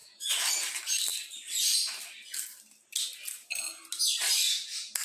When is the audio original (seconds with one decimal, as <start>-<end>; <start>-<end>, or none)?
0.5-5.0